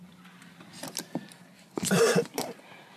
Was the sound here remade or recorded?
recorded